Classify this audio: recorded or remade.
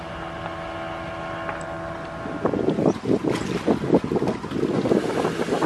recorded